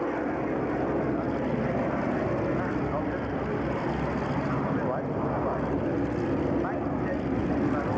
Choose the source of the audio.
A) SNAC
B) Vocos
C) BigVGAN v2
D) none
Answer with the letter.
D